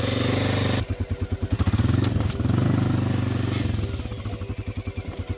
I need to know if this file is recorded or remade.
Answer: recorded